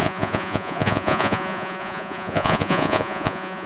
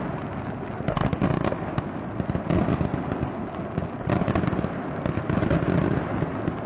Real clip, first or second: second